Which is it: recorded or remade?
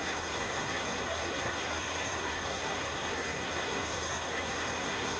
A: remade